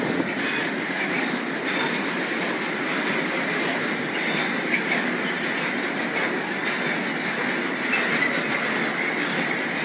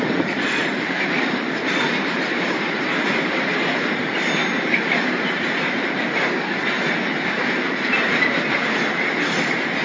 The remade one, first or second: second